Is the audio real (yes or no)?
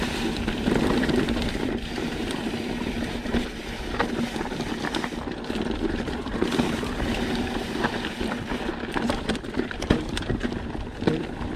no